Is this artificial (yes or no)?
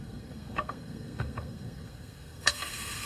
yes